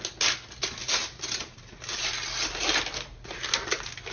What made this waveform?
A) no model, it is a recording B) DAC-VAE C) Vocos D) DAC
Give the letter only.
A